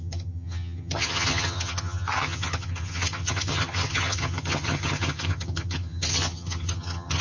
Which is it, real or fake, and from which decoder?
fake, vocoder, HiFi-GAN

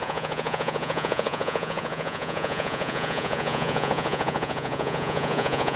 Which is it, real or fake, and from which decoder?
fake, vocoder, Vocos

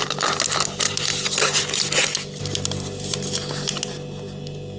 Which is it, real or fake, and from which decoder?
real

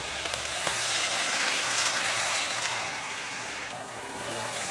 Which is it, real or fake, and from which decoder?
fake, codec, SNAC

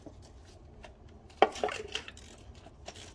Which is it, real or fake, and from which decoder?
real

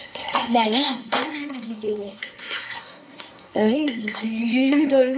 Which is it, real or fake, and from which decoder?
fake, codec, SNAC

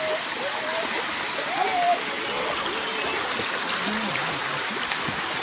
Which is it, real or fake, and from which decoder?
real